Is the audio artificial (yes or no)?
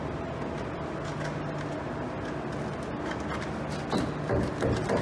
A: no